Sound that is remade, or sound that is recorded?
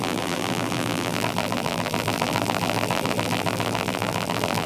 remade